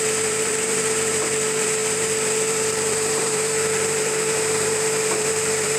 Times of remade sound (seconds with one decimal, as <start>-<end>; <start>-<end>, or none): 0.0-5.8